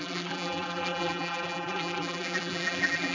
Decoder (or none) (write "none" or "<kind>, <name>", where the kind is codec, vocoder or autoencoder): vocoder, BigVGAN v2